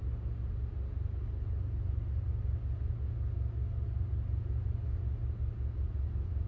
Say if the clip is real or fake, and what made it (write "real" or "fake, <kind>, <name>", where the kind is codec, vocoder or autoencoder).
real